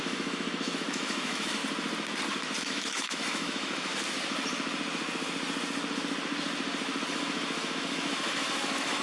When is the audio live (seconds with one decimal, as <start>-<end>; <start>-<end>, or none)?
1.6-2.6; 3.9-7.1